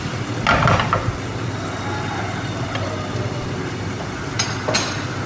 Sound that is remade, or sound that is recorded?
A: recorded